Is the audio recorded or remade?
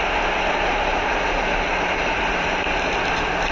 recorded